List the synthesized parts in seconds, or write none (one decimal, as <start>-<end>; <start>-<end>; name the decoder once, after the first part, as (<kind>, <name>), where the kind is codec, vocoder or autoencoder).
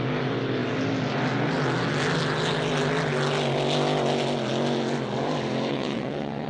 5.7-6.5 (vocoder, WaveNeXt)